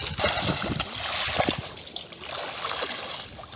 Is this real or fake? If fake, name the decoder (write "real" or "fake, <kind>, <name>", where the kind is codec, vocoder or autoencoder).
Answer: real